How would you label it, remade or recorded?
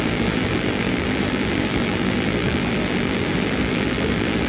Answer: remade